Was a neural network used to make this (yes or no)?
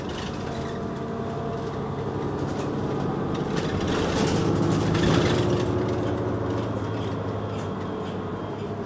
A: no